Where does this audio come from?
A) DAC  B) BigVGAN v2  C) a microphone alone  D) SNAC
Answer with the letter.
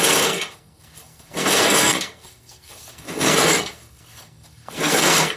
D